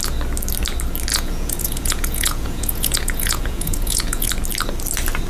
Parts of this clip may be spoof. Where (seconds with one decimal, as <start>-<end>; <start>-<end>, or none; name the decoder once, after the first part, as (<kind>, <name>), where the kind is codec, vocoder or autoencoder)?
1.1-4.3 (vocoder, Vocos)